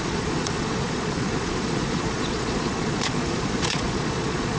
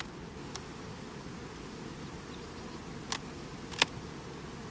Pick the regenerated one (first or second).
first